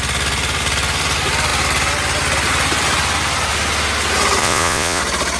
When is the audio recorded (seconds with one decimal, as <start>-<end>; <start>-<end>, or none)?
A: 0.0-4.4; 5.0-5.4